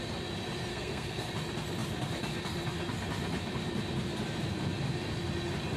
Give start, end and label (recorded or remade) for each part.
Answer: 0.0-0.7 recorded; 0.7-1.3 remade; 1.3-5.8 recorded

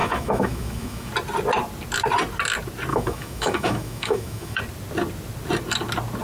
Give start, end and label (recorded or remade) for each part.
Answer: 0.0-1.1 remade; 1.1-2.9 recorded; 2.9-4.6 remade; 4.6-6.2 recorded

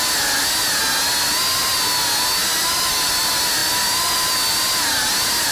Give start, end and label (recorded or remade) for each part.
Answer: 0.0-5.5 recorded

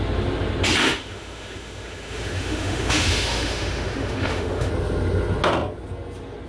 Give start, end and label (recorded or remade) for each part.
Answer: 0.0-0.8 recorded; 0.8-4.7 remade; 4.7-6.5 recorded

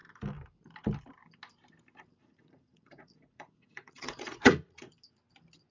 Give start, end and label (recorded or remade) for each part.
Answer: 0.0-2.2 recorded; 2.2-4.9 remade; 4.9-5.7 recorded

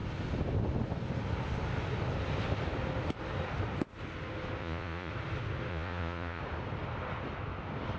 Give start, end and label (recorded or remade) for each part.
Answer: 0.0-4.6 recorded; 4.6-5.1 remade; 5.1-5.7 recorded; 5.7-6.4 remade; 6.4-8.0 recorded